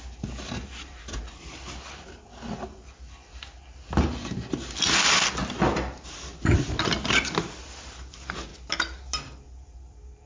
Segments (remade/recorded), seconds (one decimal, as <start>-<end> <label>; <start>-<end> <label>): 0.0-10.3 recorded